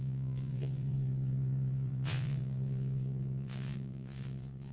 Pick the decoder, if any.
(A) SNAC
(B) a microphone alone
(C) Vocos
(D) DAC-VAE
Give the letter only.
C